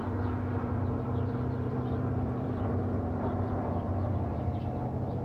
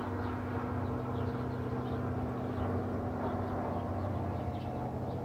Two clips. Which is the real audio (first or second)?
second